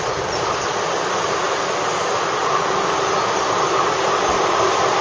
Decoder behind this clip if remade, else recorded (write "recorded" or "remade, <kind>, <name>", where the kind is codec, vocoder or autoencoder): recorded